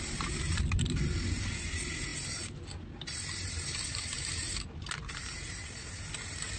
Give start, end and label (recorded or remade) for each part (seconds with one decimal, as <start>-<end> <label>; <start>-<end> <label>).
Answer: 0.0-6.6 recorded